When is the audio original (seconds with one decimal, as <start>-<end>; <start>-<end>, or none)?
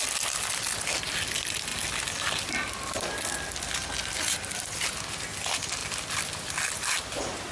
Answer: 0.0-7.5